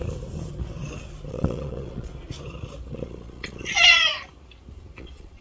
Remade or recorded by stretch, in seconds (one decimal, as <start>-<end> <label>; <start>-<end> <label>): 0.0-1.3 recorded; 1.3-2.1 remade; 2.1-2.9 recorded; 2.9-4.1 remade; 4.1-5.0 recorded; 5.0-5.4 remade